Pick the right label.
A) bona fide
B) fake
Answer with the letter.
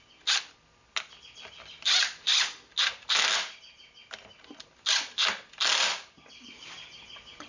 A